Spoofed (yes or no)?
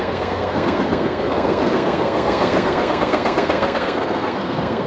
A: yes